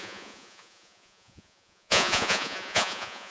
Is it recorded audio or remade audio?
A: remade